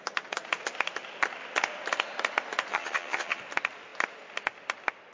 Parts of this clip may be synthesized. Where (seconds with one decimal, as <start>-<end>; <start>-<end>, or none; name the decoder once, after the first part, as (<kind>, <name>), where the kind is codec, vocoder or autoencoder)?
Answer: 2.7-3.4 (vocoder, HiFi-GAN)